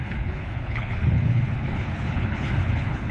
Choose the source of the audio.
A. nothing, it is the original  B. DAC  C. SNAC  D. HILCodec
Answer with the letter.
D